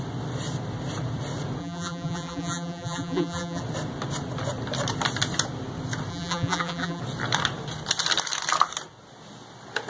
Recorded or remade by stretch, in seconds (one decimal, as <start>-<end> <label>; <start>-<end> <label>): 0.0-1.6 recorded; 1.6-3.6 remade; 3.6-6.1 recorded; 6.1-7.0 remade; 7.0-9.9 recorded